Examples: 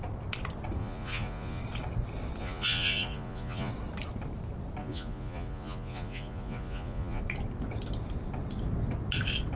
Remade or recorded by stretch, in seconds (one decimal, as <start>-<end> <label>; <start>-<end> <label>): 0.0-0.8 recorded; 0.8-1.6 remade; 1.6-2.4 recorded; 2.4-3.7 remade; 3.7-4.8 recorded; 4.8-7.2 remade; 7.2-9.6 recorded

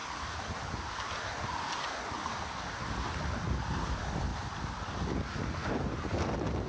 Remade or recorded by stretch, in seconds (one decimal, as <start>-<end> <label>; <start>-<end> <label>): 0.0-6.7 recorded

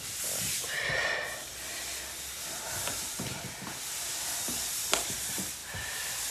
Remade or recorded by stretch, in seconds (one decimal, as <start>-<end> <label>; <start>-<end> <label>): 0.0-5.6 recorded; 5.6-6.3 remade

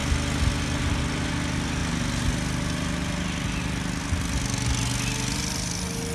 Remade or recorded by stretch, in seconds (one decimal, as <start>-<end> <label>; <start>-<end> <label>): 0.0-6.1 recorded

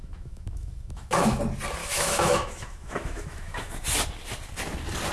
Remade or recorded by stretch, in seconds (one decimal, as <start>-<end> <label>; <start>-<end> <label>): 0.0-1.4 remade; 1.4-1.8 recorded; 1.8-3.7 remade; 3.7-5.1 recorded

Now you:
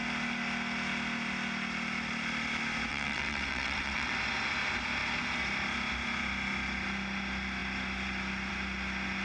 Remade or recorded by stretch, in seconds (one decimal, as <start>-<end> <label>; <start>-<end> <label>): 0.0-2.9 recorded; 2.9-4.1 remade; 4.1-9.2 recorded